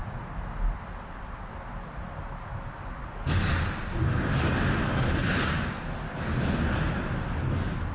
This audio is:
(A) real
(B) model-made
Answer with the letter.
A